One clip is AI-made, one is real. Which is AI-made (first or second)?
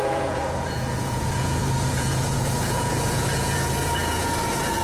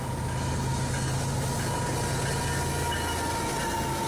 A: first